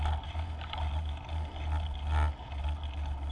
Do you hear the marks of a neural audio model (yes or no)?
no